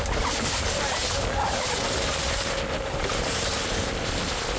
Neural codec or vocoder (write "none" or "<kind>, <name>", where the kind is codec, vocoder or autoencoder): none